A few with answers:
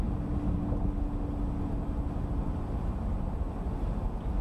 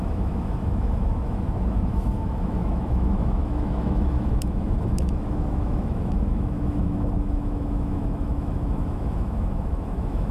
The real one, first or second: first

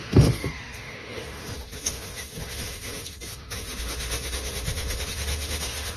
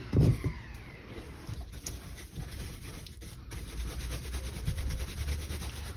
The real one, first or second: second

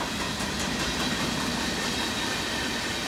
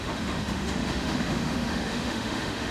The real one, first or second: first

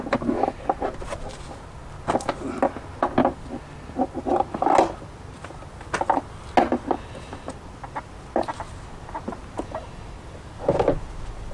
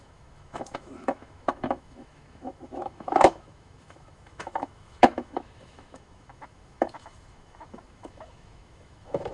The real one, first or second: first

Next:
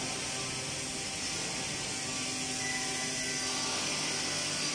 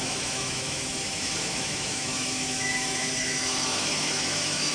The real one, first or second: first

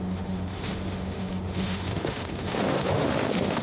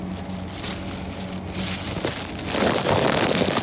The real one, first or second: second